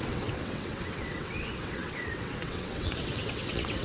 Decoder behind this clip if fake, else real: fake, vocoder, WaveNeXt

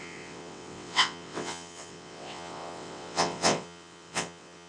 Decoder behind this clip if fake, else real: fake, vocoder, WaveNeXt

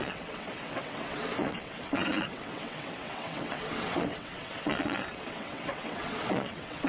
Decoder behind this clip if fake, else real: fake, vocoder, WaveNeXt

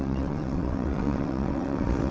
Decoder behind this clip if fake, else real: fake, vocoder, WaveNeXt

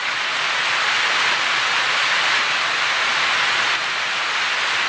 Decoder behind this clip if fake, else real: real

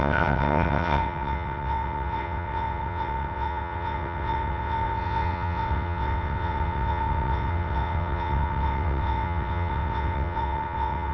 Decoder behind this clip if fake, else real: fake, vocoder, WaveNeXt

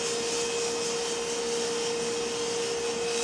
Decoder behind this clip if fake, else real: real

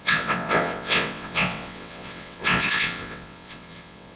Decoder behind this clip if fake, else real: fake, vocoder, WaveNeXt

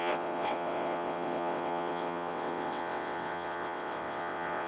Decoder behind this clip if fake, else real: fake, vocoder, WaveNeXt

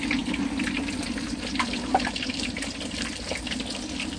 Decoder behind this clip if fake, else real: real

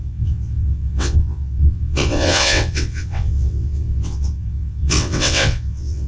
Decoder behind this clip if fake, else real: fake, vocoder, WaveNeXt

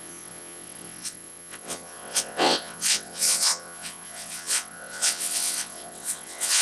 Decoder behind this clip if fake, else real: fake, vocoder, WaveNeXt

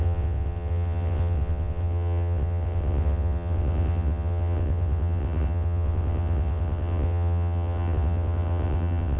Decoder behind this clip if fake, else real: fake, vocoder, WaveNeXt